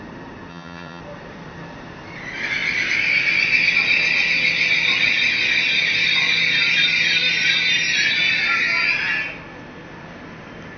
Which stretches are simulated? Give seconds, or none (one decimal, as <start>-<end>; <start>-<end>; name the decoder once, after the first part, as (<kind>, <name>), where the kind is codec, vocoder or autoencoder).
0.5-1.0 (vocoder, HiFi-GAN)